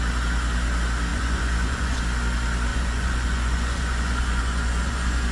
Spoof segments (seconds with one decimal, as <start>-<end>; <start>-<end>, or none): 1.1-2.0; 2.7-5.3